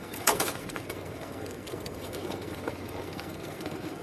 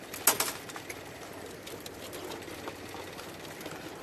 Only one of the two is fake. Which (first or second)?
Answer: first